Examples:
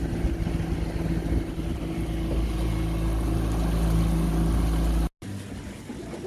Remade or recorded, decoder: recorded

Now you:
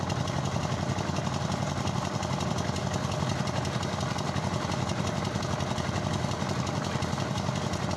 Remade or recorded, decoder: recorded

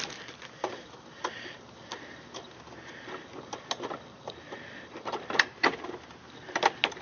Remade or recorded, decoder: recorded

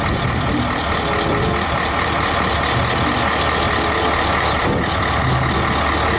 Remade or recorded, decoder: recorded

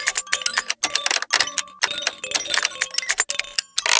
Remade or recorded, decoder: recorded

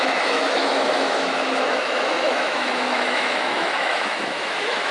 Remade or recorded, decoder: remade, autoencoder, DAC-VAE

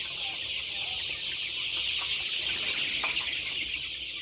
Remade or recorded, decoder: recorded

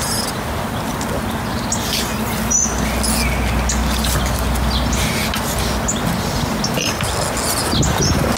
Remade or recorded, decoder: recorded